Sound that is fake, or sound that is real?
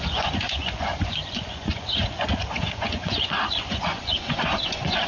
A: fake